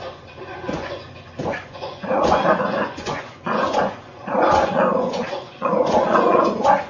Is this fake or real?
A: fake